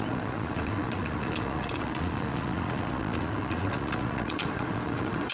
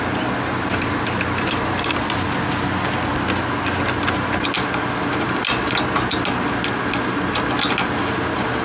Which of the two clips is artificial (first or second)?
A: first